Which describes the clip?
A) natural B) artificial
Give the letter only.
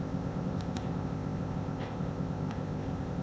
B